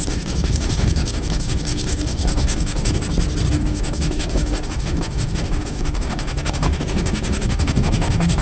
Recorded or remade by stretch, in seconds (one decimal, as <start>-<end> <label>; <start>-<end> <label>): 0.0-3.0 remade; 3.0-3.5 recorded; 3.5-8.4 remade